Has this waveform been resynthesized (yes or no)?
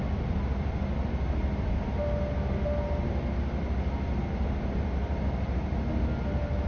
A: no